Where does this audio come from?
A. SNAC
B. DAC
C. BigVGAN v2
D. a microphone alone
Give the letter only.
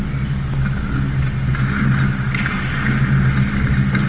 D